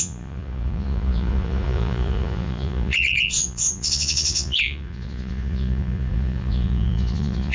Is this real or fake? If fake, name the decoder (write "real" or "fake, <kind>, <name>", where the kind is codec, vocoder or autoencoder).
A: fake, vocoder, Vocos